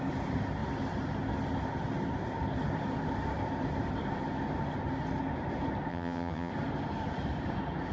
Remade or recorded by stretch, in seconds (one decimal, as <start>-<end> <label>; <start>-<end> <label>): 0.0-5.9 recorded; 5.9-6.5 remade; 6.5-7.9 recorded